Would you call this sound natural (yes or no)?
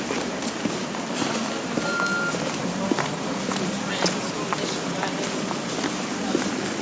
yes